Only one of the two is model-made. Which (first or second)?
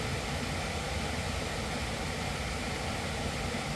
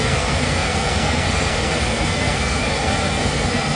second